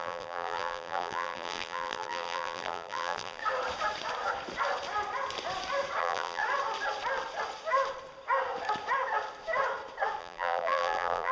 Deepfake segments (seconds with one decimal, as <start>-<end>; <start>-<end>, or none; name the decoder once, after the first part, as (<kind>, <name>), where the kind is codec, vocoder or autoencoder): 0.0-3.4 (vocoder, BigVGAN v2); 6.0-6.4; 10.2-11.3